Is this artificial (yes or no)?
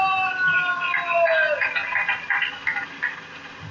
no